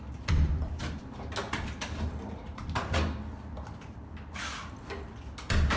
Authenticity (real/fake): real